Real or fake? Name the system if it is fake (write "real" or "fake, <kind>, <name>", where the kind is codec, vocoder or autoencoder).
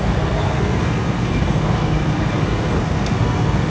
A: fake, codec, SNAC